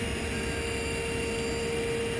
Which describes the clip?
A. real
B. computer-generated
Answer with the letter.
A